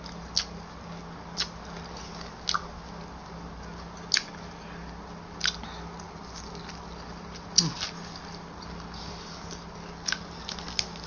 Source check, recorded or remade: recorded